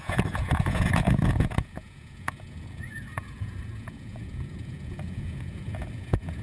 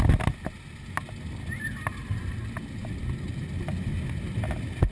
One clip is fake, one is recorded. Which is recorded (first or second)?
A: second